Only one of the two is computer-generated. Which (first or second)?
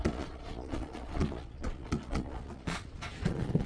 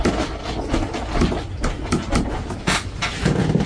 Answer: first